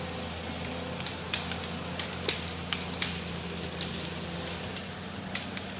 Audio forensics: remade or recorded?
recorded